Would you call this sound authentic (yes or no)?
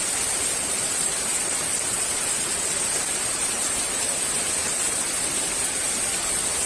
yes